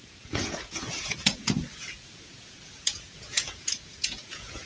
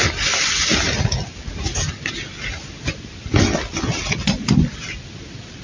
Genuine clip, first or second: second